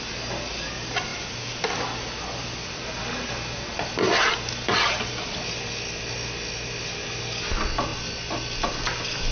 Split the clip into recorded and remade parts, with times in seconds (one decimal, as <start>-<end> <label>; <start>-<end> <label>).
0.0-9.3 recorded